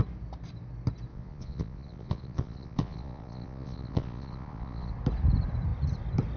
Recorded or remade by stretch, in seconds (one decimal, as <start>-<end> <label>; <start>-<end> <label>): 0.0-1.1 recorded; 1.1-4.9 remade; 4.9-6.4 recorded